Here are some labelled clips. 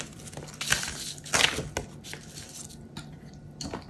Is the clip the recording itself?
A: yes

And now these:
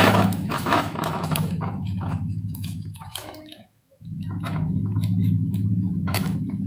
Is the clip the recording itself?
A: no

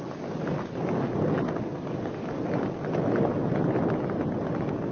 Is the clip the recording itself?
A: yes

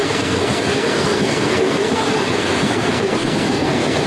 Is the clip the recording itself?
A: no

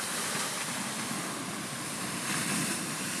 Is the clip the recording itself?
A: yes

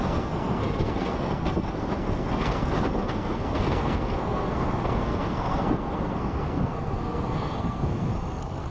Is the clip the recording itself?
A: no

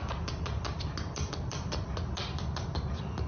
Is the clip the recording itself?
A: yes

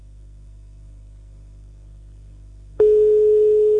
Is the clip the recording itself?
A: no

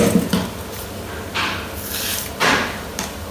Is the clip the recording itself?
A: yes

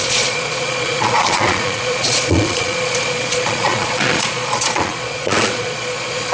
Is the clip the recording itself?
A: no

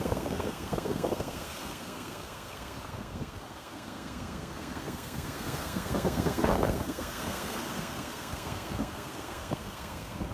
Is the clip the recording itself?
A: no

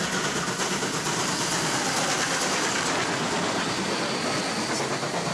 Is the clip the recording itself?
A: yes